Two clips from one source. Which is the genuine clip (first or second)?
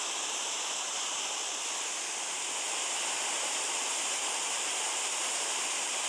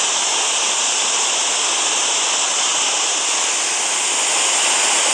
second